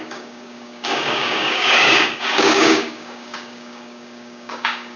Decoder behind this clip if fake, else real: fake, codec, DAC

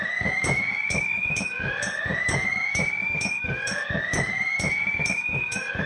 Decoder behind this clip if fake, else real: fake, codec, DAC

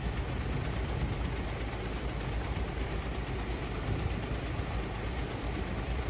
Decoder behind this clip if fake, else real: real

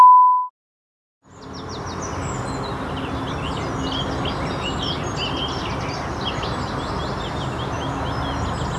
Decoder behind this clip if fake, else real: real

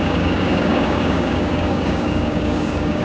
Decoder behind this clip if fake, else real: fake, codec, DAC